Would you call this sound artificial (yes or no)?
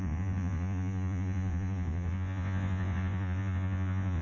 yes